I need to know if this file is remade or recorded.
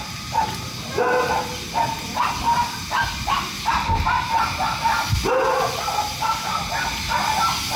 recorded